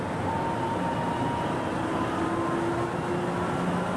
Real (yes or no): yes